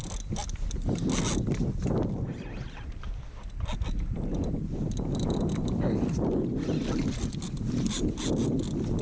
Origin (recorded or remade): recorded